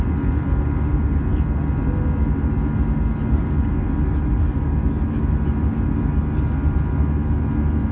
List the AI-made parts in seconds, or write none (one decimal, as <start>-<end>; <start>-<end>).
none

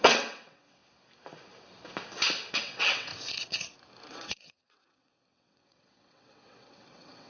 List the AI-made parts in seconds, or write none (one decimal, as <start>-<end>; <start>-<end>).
0.0-0.8; 2.5-3.1; 4.1-7.3

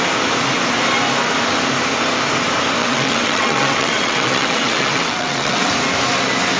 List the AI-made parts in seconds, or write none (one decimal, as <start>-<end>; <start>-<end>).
2.8-5.7

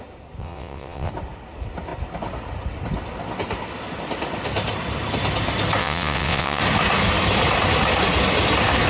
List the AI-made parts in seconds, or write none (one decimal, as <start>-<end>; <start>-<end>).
0.4-1.1; 5.8-6.6

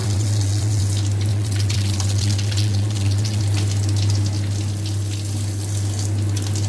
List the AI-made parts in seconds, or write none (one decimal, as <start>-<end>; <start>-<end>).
0.0-0.8; 1.3-3.4

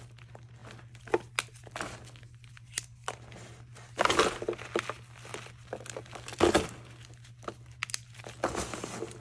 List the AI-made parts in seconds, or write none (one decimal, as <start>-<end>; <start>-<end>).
none

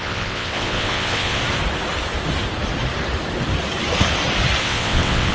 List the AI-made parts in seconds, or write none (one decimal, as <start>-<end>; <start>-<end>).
0.0-1.4; 4.6-5.3

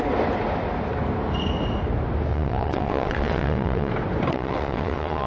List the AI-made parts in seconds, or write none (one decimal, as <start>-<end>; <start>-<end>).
2.3-3.9; 4.3-5.3